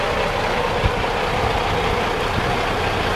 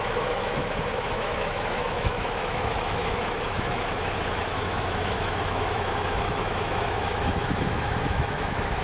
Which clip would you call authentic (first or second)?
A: first